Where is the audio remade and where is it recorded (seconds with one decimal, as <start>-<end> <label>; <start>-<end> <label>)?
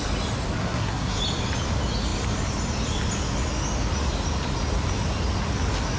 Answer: 0.0-0.6 recorded; 0.6-1.2 remade; 1.2-6.0 recorded